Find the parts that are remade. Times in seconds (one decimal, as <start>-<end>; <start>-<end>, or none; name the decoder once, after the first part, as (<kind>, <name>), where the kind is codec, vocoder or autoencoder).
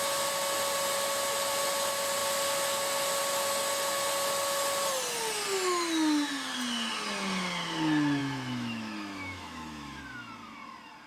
8.2-10.0 (autoencoder, DAC-VAE)